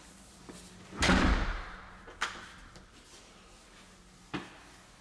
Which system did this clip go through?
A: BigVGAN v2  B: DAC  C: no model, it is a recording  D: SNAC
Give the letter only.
C